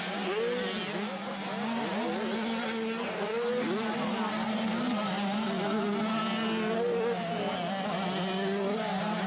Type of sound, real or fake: real